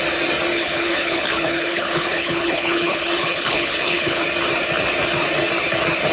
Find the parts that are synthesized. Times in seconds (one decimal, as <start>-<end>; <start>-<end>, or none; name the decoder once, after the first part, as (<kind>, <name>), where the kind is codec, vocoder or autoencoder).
0.5-4.2 (codec, HILCodec)